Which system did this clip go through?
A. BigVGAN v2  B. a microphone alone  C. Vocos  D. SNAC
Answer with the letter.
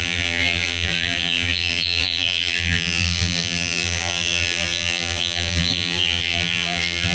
A